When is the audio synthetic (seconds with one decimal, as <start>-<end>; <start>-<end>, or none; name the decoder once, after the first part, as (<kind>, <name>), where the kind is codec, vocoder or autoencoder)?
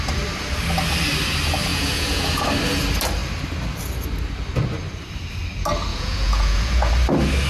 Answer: 1.7-2.3 (vocoder, Vocos); 5.9-6.9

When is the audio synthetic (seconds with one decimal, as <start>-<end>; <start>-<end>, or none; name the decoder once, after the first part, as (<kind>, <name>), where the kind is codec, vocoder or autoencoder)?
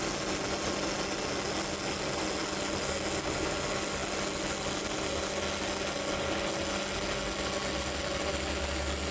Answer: none